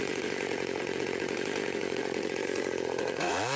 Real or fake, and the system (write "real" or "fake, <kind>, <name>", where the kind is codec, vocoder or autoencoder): fake, vocoder, Vocos